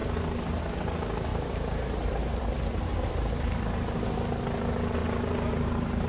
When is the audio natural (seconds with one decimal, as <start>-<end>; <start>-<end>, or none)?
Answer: 0.0-1.3; 3.6-5.0